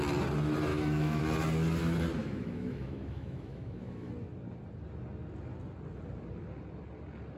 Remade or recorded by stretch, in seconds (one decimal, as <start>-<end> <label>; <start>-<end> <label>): 0.0-0.7 recorded; 0.7-1.2 remade; 1.2-2.2 recorded; 2.2-4.1 remade; 4.1-7.4 recorded